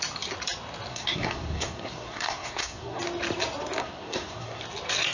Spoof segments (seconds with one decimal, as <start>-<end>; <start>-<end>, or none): 0.9-3.0; 3.8-4.6